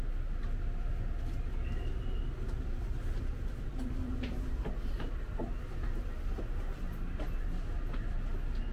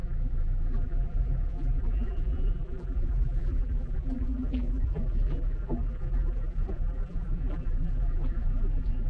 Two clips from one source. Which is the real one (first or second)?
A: first